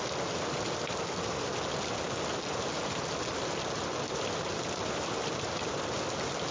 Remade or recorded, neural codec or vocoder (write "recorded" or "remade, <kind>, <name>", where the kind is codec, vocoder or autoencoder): recorded